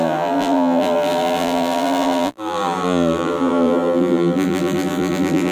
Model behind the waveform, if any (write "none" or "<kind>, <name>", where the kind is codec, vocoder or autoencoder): vocoder, BigVGAN v2